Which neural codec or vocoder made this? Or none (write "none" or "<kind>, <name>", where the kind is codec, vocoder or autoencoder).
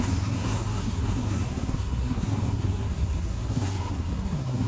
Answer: codec, SNAC